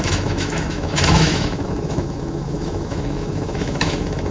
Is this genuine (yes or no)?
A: no